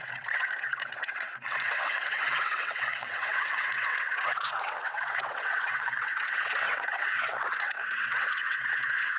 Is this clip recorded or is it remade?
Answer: remade